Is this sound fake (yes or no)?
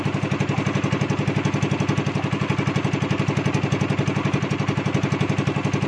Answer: no